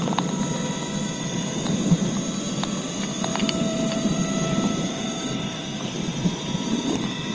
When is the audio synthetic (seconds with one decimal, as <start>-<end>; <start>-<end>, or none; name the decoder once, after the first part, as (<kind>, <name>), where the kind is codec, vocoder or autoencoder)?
3.7-6.6 (vocoder, BigVGAN v2)